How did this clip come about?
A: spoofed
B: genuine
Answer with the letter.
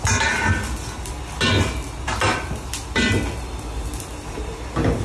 B